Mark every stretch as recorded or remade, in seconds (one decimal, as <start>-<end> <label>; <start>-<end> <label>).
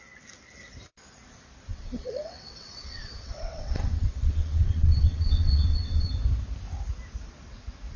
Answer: 0.0-1.7 recorded; 1.7-6.1 remade; 6.1-8.0 recorded